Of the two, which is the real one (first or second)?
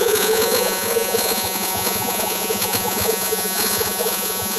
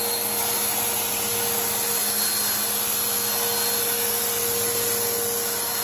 second